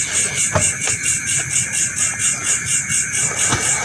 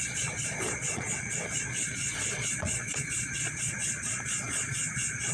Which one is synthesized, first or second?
second